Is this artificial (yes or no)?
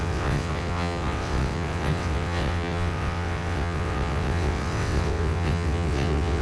yes